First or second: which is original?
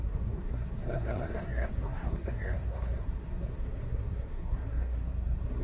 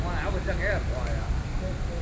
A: second